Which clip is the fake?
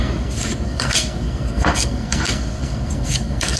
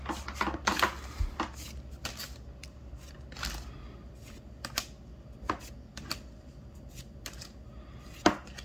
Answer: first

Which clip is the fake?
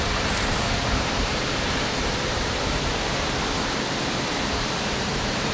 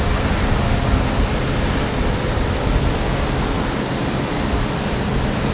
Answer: first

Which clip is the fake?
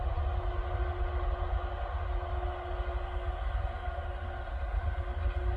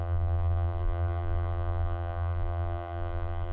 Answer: second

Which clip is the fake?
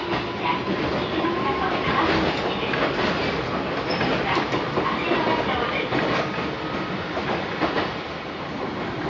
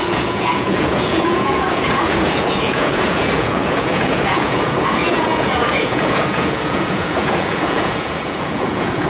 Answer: second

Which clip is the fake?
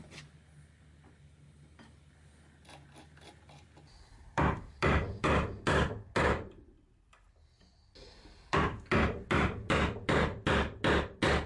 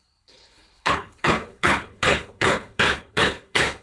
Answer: second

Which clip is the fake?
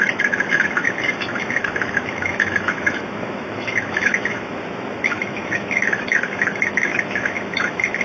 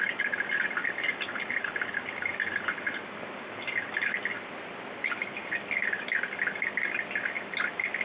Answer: first